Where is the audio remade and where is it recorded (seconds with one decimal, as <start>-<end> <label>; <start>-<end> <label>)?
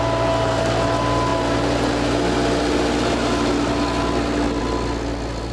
0.0-5.5 recorded